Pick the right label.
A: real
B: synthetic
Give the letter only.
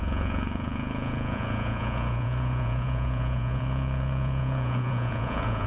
B